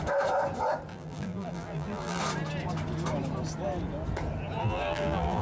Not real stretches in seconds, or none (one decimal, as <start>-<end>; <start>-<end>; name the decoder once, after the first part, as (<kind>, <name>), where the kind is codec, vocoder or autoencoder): 0.9-2.2 (vocoder, BigVGAN v2); 4.6-5.4